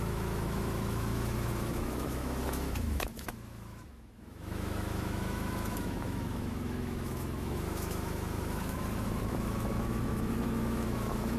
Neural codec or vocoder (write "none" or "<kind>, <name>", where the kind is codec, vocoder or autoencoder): autoencoder, DAC-VAE